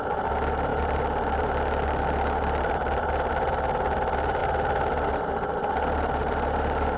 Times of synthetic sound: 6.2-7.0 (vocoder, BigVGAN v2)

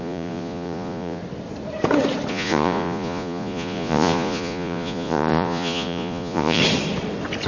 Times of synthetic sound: 0.0-1.2 (vocoder, Vocos); 2.3-6.6

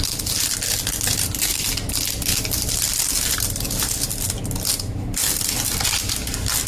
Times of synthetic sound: 1.1-1.7 (vocoder, BigVGAN v2)

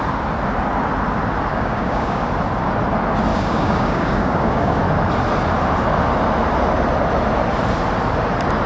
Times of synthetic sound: 1.5-2.3 (codec, DAC); 3.3-4.8

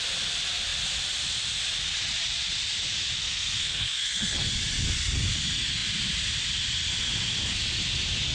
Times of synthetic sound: 3.2-4.5 (codec, SNAC)

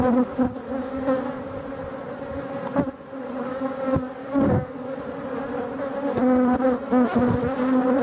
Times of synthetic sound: 4.2-5.0 (codec, DAC)

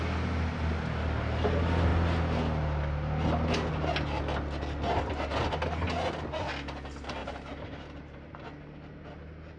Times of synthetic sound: 7.2-8.3 (vocoder, BigVGAN v2)

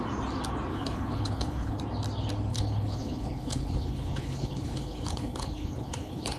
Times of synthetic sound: 0.7-1.8 (codec, HILCodec); 2.5-6.4